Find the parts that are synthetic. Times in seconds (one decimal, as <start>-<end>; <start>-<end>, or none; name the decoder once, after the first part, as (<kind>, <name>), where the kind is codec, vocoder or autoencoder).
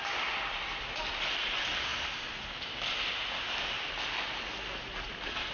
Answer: none